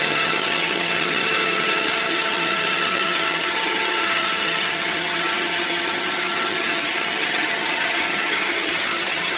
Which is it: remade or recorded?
remade